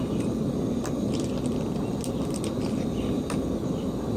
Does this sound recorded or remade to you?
recorded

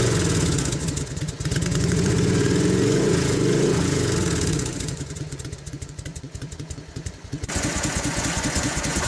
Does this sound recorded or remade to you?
remade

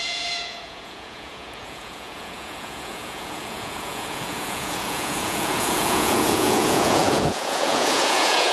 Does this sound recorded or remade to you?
remade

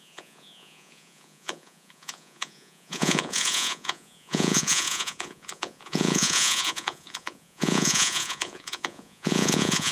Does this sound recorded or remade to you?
remade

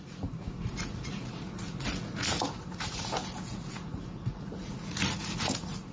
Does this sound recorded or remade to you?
remade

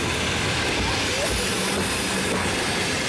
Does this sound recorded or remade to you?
recorded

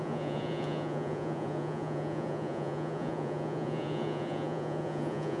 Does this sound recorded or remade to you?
remade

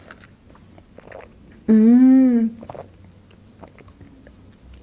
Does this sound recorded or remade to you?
recorded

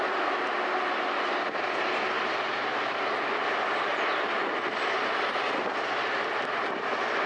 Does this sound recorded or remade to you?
recorded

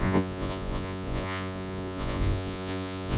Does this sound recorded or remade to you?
remade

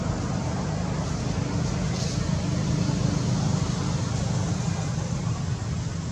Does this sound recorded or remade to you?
recorded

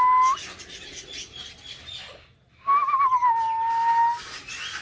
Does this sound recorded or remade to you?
recorded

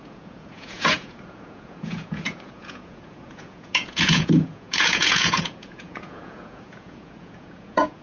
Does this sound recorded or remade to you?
remade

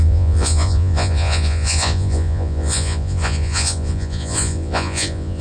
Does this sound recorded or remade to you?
remade